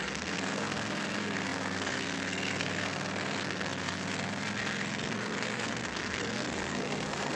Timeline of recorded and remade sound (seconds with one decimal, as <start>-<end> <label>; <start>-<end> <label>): 0.0-7.4 remade